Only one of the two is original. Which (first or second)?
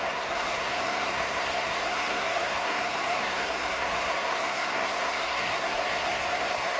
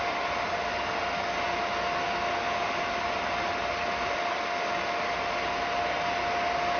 second